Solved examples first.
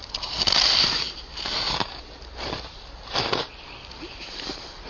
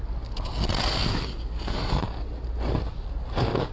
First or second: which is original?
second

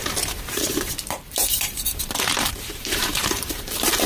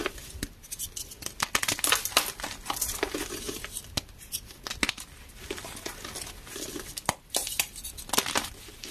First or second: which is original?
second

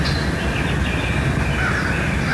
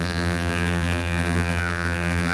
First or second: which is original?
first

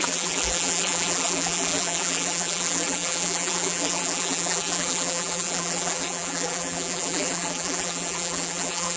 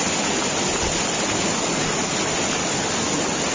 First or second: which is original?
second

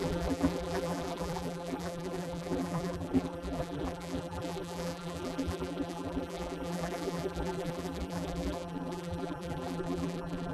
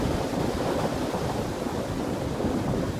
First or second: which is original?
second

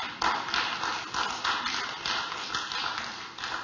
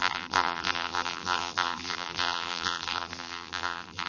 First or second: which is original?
first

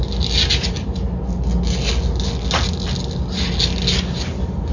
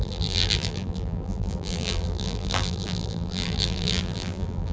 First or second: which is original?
first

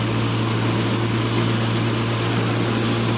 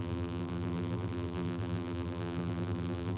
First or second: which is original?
first